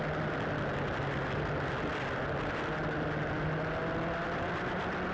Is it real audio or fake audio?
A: real